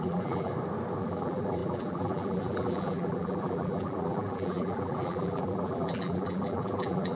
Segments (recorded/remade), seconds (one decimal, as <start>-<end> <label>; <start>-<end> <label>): 0.0-0.5 remade; 0.5-1.0 recorded; 1.0-7.2 remade